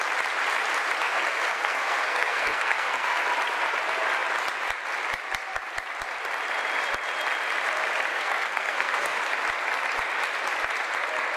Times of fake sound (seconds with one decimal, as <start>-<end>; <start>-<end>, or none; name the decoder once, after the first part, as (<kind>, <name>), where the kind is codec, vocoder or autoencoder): 1.0-3.2 (codec, SNAC); 8.1-9.2